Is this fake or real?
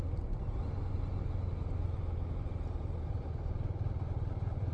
real